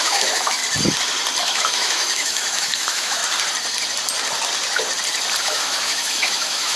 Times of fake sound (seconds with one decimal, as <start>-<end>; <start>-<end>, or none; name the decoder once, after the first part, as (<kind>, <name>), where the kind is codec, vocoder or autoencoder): 0.0-0.6 (autoencoder, DAC-VAE); 1.4-3.2; 5.4-6.8